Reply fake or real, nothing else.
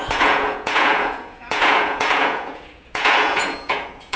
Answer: fake